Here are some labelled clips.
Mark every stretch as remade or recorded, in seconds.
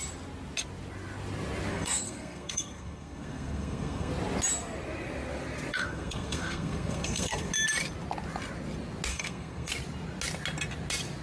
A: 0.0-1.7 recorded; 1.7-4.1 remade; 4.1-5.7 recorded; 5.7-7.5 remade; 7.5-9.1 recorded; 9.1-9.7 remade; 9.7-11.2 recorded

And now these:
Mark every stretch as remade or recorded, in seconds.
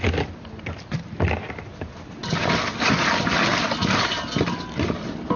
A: 0.0-5.4 recorded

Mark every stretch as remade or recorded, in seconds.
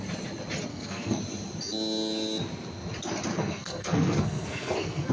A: 0.0-0.7 recorded; 0.7-1.2 remade; 1.2-3.3 recorded; 3.3-5.1 remade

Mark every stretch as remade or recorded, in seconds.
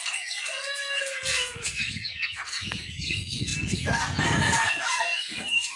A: 0.0-5.8 remade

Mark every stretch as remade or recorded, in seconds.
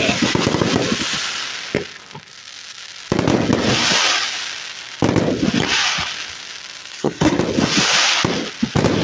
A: 0.0-6.9 recorded; 6.9-7.4 remade; 7.4-9.0 recorded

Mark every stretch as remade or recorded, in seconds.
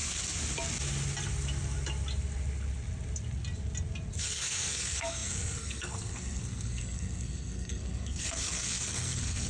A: 0.0-4.2 recorded; 4.2-9.5 remade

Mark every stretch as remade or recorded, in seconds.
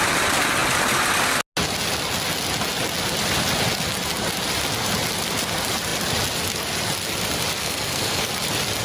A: 0.0-7.6 recorded; 7.6-8.3 remade; 8.3-8.8 recorded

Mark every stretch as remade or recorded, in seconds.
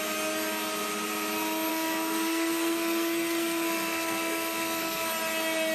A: 0.0-1.7 recorded; 1.7-5.1 remade; 5.1-5.7 recorded